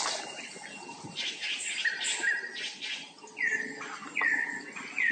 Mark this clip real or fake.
real